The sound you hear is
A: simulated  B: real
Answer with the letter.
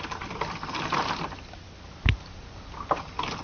B